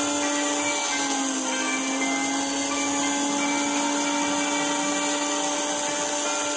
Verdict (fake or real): real